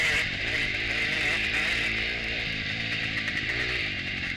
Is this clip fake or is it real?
fake